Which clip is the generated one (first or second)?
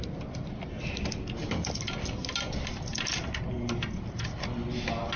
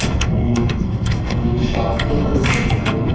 second